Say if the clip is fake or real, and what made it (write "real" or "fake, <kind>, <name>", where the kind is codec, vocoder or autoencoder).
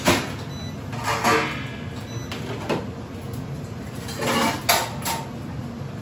real